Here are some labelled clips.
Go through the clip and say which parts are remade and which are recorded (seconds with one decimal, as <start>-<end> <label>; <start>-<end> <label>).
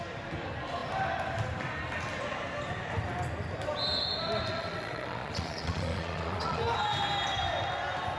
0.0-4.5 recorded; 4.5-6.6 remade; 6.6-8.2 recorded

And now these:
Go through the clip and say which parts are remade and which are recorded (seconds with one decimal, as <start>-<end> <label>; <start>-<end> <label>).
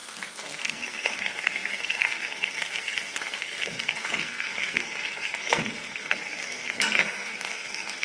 0.0-8.0 remade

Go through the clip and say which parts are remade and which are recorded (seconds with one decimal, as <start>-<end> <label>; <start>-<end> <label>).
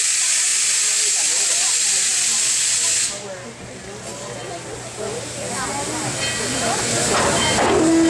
0.0-8.1 recorded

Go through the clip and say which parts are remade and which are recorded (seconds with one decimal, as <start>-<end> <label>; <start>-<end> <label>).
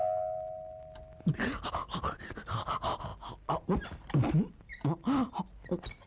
0.0-6.1 recorded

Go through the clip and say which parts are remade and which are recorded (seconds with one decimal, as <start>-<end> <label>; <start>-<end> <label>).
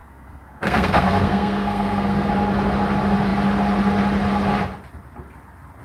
0.0-2.3 remade; 2.3-5.8 recorded